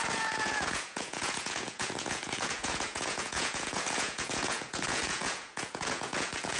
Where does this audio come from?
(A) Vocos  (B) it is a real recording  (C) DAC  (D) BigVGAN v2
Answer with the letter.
A